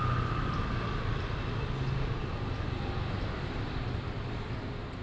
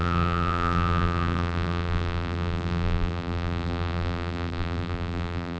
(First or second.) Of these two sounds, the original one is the first